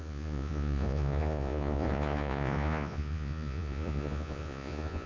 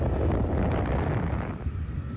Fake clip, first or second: first